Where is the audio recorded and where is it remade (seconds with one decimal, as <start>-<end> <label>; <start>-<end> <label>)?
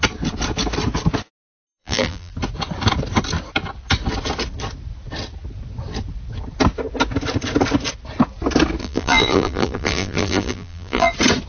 0.0-1.8 recorded; 1.8-2.3 remade; 2.3-8.8 recorded; 8.8-11.1 remade; 11.1-11.5 recorded